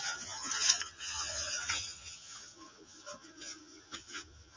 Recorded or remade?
remade